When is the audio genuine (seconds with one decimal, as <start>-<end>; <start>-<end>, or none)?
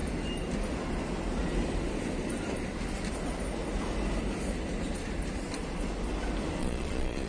0.0-6.6